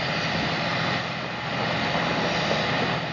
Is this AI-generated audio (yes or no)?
no